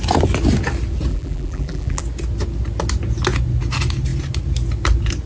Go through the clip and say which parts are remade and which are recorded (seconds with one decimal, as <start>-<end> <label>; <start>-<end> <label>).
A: 0.0-1.1 recorded; 1.1-2.0 remade; 2.0-5.3 recorded